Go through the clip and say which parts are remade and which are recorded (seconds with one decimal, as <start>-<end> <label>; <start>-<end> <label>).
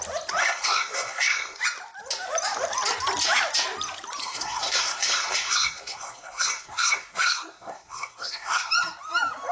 0.0-0.4 recorded; 0.4-1.6 remade; 1.6-4.2 recorded; 4.2-8.7 remade; 8.7-9.5 recorded